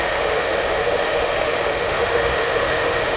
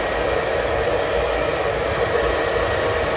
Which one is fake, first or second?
first